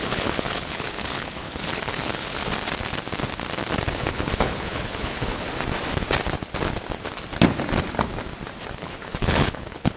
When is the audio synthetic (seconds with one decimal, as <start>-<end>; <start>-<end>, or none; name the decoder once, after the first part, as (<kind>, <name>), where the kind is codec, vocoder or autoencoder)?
0.0-2.4 (codec, HILCodec); 3.9-5.5; 8.8-10.0

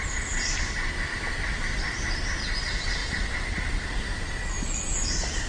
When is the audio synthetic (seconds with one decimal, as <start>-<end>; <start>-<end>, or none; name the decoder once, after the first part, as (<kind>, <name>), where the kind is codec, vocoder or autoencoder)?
1.1-2.5 (vocoder, BigVGAN v2); 3.0-4.3